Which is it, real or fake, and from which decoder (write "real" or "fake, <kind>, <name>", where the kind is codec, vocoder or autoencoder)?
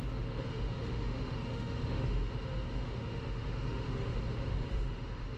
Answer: fake, autoencoder, DAC-VAE